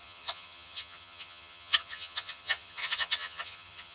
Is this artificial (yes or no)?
yes